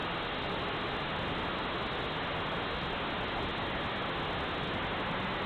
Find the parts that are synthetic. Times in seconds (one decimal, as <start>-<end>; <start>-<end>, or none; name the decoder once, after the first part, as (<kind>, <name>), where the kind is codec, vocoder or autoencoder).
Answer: none